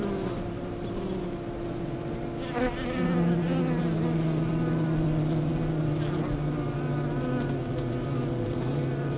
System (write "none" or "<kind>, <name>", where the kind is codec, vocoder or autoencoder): none